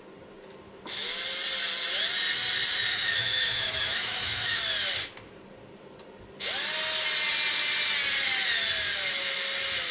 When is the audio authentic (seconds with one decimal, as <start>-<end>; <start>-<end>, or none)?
0.0-2.9; 4.6-9.9